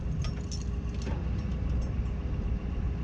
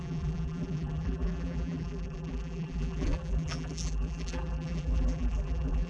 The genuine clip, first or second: first